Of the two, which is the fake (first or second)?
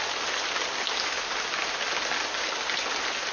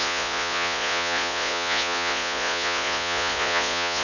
second